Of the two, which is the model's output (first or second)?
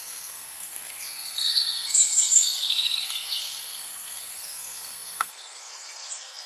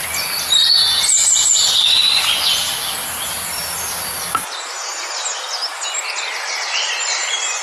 first